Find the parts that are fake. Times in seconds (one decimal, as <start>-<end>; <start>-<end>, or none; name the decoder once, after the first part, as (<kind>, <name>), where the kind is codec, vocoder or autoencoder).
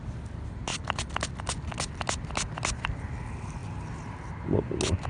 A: none